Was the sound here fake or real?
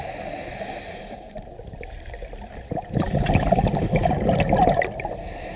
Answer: real